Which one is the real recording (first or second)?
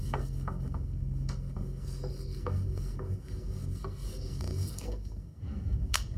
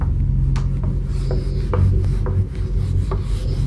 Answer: second